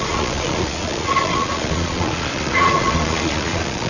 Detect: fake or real fake